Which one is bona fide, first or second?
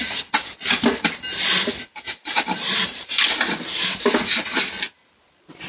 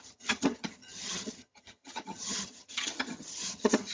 first